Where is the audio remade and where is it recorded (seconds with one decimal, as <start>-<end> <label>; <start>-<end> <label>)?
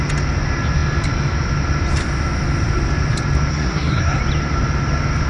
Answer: 0.0-3.5 recorded; 3.5-4.2 remade; 4.2-5.3 recorded